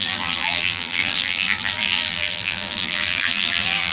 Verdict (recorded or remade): remade